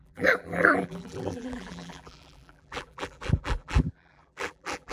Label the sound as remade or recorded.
remade